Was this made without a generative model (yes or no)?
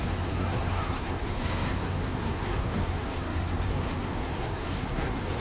no